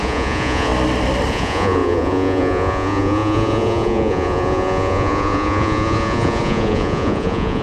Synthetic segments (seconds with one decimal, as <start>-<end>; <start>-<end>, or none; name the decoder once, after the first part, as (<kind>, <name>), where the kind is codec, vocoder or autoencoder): 0.0-0.7 (vocoder, Vocos); 1.3-7.6